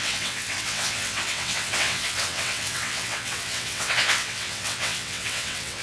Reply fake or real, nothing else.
fake